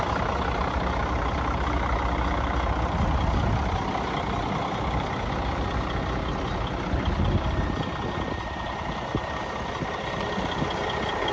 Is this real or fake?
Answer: real